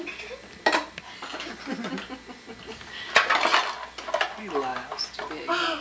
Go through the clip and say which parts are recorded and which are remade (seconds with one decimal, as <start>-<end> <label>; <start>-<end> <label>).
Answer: 0.0-4.7 recorded; 4.7-5.3 remade; 5.3-5.8 recorded